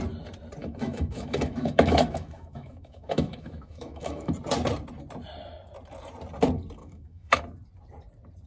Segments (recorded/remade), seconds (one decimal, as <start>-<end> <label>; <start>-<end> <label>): 0.0-0.6 recorded; 0.6-4.3 remade; 4.3-6.8 recorded; 6.8-7.4 remade; 7.4-8.5 recorded